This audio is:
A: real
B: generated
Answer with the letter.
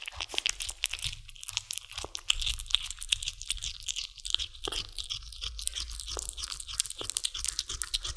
A